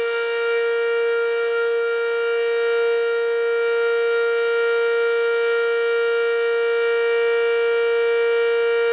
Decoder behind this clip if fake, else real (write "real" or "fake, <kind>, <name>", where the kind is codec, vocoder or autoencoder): real